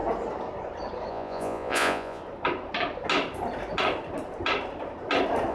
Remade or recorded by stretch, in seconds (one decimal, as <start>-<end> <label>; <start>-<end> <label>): 0.0-1.1 recorded; 1.1-2.2 remade; 2.2-5.5 recorded